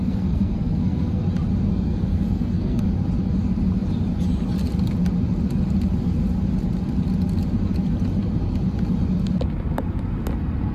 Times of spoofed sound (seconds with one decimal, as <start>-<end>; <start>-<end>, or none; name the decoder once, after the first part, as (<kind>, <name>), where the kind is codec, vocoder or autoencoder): 0.0-1.2 (codec, SNAC); 1.7-2.9